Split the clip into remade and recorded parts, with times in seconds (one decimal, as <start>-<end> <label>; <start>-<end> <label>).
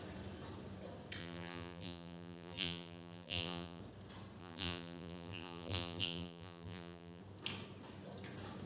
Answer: 0.0-1.2 recorded; 1.2-3.8 remade; 3.8-4.4 recorded; 4.4-7.2 remade; 7.2-8.7 recorded